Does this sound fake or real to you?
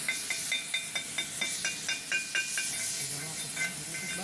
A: real